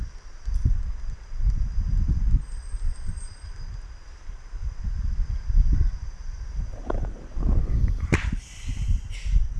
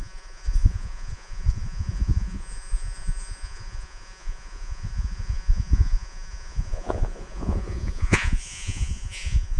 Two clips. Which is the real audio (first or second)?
first